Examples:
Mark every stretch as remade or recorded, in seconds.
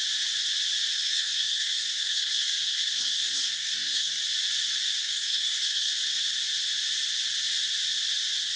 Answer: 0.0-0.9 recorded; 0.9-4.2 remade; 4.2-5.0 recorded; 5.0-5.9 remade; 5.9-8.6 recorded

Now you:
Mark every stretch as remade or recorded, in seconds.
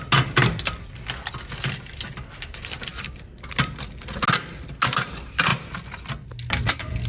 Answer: 0.0-7.1 recorded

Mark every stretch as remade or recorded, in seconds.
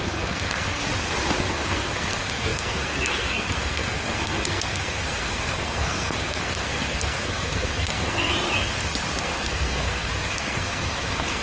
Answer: 0.0-0.8 remade; 0.8-1.4 recorded; 1.4-8.3 remade; 8.3-9.2 recorded; 9.2-11.4 remade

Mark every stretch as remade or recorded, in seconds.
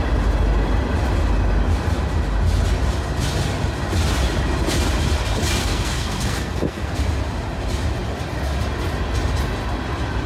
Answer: 0.0-5.6 recorded; 5.6-7.0 remade; 7.0-10.3 recorded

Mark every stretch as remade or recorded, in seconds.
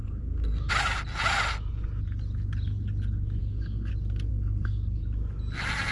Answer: 0.0-0.7 remade; 0.7-3.4 recorded; 3.4-3.9 remade; 3.9-4.3 recorded; 4.3-5.0 remade; 5.0-5.9 recorded